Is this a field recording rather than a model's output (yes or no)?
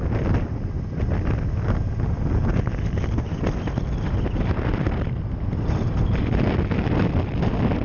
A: yes